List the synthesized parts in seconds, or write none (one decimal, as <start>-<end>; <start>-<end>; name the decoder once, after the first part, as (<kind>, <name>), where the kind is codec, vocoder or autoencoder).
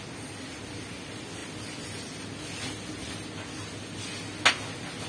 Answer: none